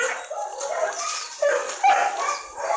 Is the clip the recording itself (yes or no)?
yes